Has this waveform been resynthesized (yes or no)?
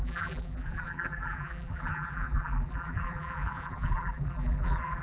yes